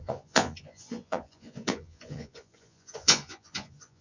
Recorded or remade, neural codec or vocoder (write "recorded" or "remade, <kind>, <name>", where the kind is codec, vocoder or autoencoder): remade, vocoder, Vocos